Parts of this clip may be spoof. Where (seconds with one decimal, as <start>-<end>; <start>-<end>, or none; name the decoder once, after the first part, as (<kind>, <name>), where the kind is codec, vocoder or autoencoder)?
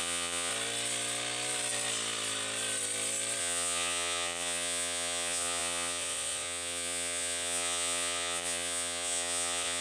0.0-0.5 (vocoder, Vocos); 3.4-9.8